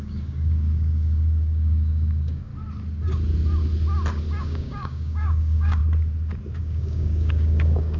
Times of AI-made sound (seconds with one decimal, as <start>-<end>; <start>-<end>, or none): 0.0-2.5; 4.4-5.8; 6.6-8.0